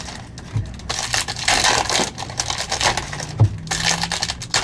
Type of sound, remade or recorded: recorded